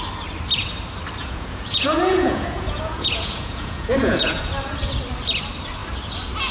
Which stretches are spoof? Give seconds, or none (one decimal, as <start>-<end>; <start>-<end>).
1.2-4.5